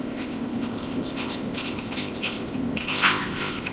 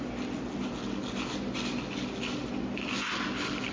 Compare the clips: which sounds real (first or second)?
second